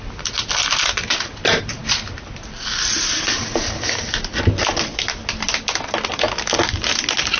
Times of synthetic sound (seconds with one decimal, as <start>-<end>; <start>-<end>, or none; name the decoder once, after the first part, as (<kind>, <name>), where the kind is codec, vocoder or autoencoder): none